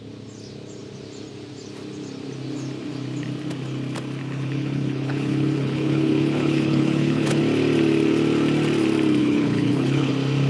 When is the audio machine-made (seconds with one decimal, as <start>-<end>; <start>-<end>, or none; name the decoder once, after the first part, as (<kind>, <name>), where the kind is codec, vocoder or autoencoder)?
4.2-7.4 (codec, HILCodec); 9.2-10.1